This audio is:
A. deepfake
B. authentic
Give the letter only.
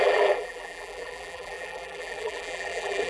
A